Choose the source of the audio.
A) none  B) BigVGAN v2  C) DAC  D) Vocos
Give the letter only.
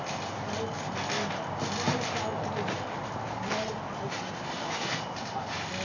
A